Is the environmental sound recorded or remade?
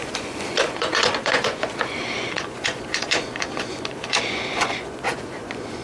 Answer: remade